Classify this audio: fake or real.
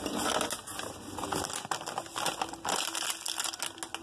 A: real